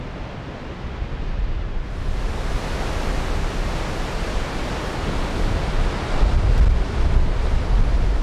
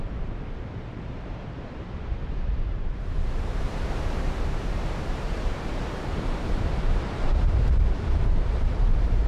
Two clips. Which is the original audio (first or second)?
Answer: first